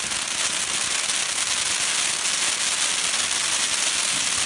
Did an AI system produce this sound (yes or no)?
no